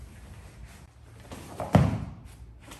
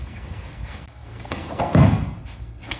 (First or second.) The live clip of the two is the first